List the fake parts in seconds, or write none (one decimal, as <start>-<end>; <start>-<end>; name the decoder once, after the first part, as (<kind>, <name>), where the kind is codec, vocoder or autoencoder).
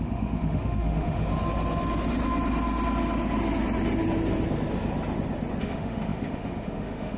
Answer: 0.0-1.3 (autoencoder, DAC-VAE); 5.6-7.2